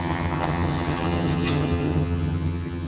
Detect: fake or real fake